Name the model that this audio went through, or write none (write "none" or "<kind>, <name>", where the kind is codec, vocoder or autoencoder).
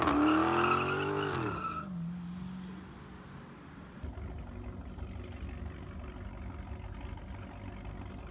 none